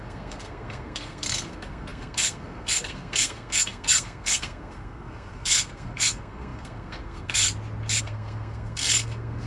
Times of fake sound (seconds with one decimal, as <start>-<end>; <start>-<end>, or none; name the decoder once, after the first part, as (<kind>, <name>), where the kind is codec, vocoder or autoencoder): 0.0-7.4 (codec, SNAC); 8.0-9.5